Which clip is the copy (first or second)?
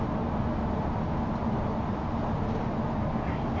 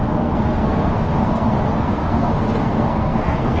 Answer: second